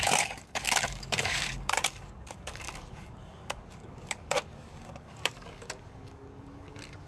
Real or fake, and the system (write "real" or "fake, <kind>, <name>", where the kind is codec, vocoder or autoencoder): fake, codec, DAC